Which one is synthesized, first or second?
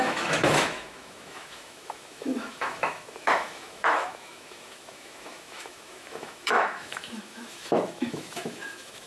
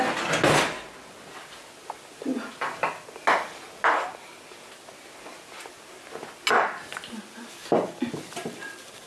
first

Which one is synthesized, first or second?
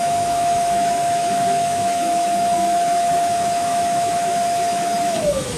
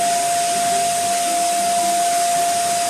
first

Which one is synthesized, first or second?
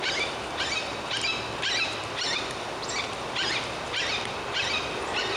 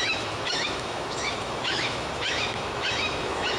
second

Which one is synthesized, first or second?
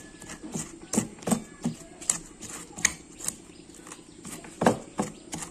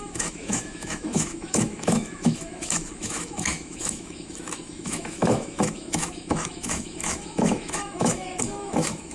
second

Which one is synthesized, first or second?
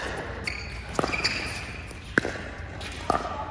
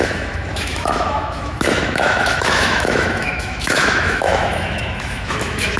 second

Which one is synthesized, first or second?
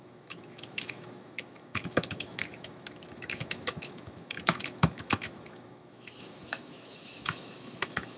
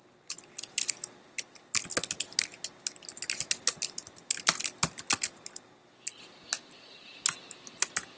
first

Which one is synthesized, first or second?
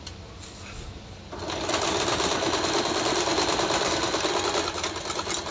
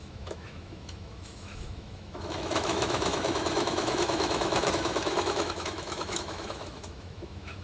second